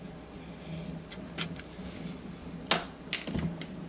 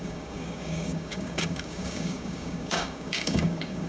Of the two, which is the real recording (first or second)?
first